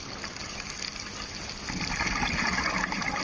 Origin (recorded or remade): recorded